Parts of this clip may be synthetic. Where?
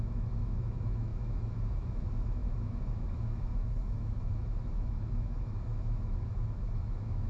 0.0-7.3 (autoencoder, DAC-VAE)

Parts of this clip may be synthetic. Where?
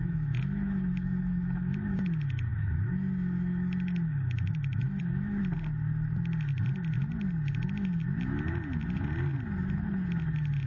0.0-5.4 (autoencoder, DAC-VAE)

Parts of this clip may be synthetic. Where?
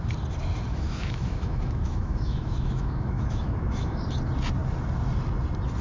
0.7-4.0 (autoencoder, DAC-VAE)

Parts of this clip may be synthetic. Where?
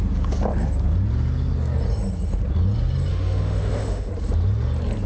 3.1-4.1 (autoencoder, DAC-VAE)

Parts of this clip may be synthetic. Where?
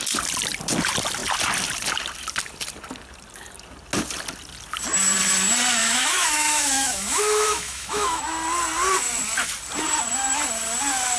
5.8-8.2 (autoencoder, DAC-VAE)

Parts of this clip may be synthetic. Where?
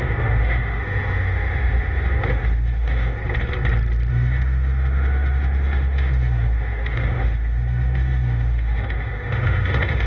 0.0-3.2 (autoencoder, DAC-VAE); 4.1-10.1